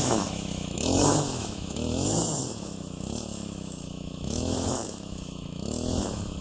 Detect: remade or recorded remade